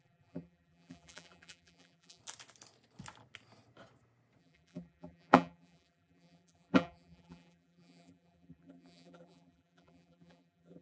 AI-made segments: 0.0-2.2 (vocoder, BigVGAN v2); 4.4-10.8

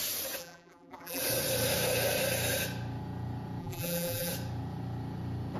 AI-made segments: 0.4-1.2 (vocoder, BigVGAN v2); 3.6-4.3

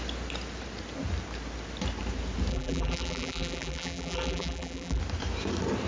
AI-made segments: 2.5-5.0 (vocoder, BigVGAN v2)